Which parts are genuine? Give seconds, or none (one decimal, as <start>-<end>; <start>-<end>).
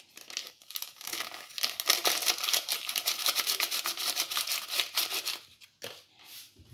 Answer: 0.0-0.4; 1.5-6.7